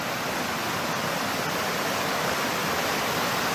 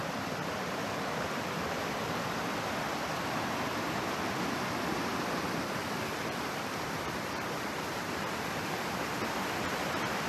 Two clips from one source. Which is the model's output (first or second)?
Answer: second